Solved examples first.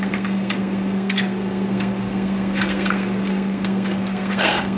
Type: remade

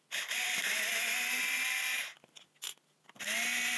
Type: recorded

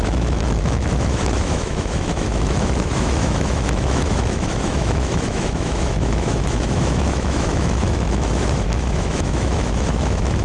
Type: remade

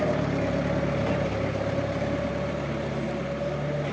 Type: recorded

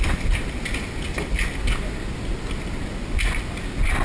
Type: recorded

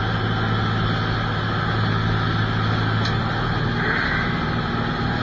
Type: recorded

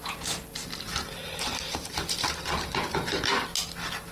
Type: recorded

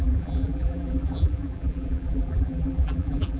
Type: remade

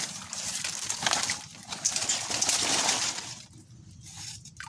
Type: recorded